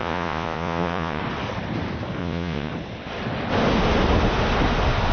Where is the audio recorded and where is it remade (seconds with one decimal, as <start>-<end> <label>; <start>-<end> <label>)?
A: 0.0-1.2 remade; 1.2-2.2 recorded; 2.2-2.7 remade; 2.7-5.1 recorded